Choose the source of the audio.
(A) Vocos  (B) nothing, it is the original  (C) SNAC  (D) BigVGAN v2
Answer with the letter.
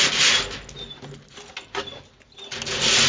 B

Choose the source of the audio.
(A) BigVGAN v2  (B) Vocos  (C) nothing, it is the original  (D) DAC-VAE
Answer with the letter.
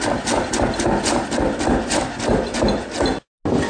C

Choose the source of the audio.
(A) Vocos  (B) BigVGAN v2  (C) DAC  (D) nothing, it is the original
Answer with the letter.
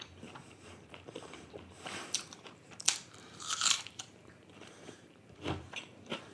B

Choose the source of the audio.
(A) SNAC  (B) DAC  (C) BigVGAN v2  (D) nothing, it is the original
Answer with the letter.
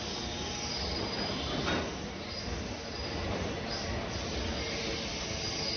D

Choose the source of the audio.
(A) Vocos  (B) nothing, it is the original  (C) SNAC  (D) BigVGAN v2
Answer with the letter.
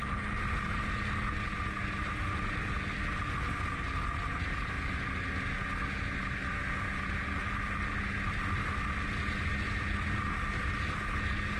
B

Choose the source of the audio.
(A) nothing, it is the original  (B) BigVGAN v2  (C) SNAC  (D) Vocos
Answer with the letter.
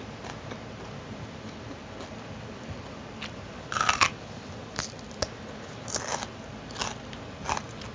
A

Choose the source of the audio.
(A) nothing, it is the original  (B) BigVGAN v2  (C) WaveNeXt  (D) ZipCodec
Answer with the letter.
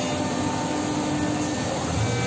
A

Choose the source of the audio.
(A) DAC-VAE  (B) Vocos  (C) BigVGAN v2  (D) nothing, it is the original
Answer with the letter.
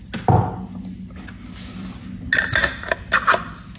D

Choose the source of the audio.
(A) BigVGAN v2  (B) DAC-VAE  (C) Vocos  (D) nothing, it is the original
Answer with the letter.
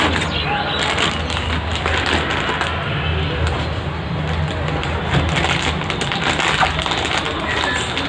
D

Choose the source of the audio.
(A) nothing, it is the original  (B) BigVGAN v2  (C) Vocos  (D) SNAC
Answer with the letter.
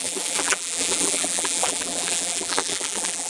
B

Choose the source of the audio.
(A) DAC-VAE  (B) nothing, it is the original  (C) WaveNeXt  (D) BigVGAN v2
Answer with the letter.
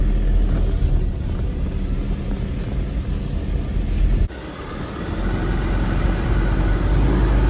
B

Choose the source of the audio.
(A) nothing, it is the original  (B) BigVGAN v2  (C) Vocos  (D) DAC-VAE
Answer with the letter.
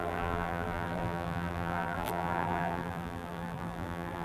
B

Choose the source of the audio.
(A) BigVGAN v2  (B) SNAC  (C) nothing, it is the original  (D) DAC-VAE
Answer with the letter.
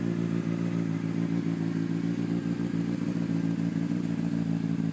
C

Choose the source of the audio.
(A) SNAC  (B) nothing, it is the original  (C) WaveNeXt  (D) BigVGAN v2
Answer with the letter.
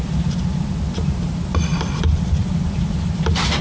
D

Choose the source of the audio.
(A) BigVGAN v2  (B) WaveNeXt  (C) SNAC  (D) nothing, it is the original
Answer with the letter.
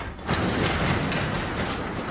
A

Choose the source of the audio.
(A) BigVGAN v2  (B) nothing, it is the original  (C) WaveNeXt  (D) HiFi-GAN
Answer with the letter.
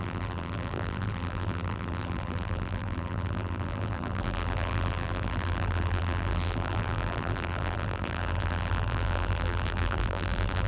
A